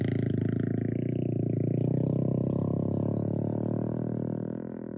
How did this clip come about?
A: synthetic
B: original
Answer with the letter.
B